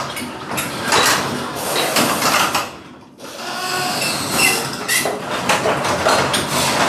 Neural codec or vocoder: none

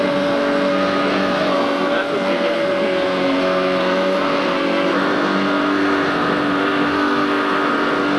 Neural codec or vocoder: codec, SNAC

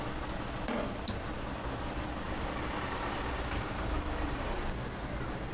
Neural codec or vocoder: none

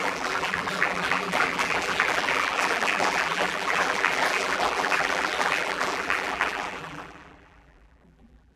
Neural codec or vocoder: vocoder, BigVGAN v2